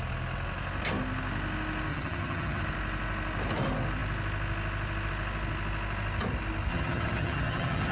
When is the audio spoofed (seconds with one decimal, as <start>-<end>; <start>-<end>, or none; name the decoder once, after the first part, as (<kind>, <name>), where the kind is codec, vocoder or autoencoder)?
1.9-2.6 (vocoder, HiFi-GAN); 6.7-7.9